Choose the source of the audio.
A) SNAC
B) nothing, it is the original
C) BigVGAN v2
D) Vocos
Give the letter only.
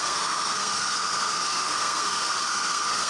A